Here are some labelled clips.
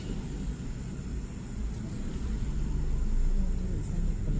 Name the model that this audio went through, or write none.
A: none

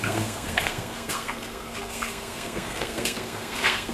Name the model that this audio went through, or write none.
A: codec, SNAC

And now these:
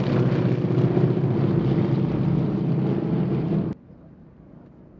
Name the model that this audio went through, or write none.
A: none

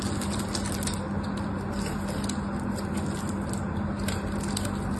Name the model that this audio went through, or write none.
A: none